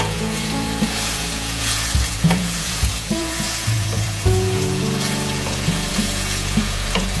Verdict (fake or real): fake